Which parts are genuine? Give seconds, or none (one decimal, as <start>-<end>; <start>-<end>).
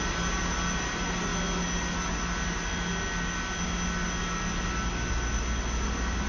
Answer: 0.0-6.3